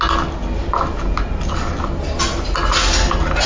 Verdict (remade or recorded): recorded